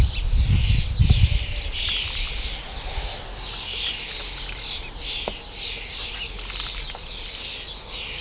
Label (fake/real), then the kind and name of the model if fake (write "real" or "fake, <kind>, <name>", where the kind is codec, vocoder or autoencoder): real